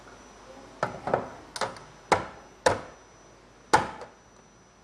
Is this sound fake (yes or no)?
no